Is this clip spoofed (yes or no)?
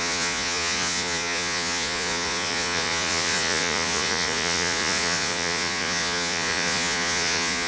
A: yes